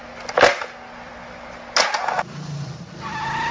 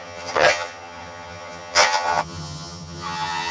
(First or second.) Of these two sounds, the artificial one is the second